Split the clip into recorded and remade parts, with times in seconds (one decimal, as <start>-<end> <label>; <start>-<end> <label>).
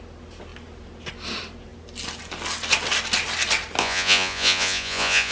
0.0-3.8 recorded; 3.8-5.3 remade